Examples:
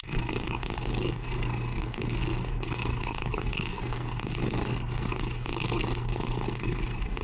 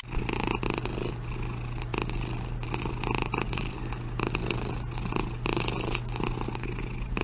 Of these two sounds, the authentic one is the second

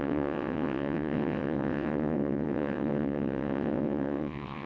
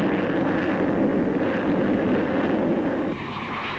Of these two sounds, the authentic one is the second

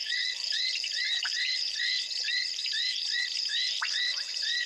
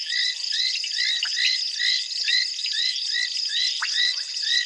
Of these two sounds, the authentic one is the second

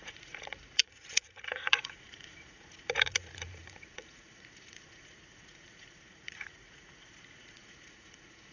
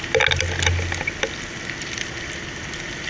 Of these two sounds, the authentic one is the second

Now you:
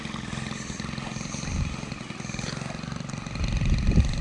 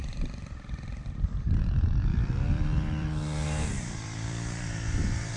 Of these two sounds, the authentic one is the first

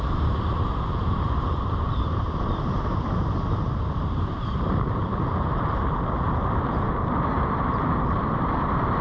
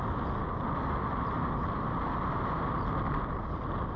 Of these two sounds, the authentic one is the second